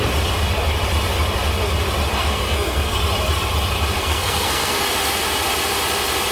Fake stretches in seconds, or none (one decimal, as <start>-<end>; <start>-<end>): 2.2-3.0; 4.0-4.9